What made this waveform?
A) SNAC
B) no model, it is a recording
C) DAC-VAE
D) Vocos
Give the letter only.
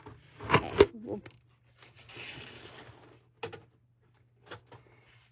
B